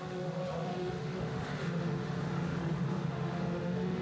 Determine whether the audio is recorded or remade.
remade